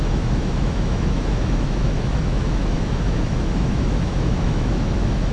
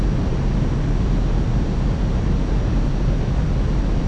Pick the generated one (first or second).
first